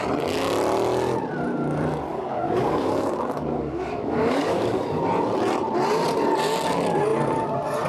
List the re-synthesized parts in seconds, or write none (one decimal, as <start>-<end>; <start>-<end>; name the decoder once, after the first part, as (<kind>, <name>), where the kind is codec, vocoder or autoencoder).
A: 2.1-5.0 (codec, DAC)